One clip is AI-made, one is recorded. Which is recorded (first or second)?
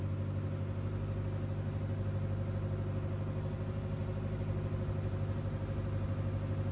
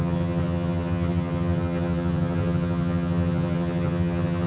first